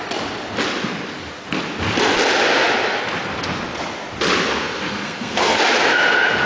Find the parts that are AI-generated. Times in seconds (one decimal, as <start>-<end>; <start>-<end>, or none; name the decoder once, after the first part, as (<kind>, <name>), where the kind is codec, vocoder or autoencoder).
4.5-5.6 (codec, SNAC)